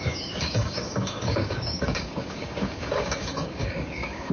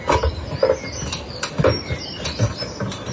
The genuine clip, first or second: second